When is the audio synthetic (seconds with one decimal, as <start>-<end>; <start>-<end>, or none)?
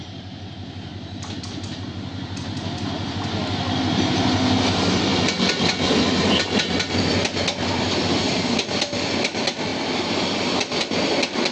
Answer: none